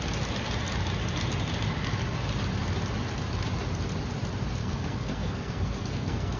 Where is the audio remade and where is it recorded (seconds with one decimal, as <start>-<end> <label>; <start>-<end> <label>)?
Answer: 0.0-4.6 recorded; 4.6-6.4 remade